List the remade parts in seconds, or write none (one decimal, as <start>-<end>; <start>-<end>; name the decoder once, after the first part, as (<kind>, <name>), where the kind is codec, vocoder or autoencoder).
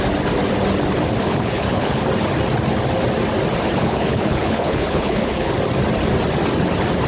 1.2-2.0 (codec, HILCodec); 3.8-5.5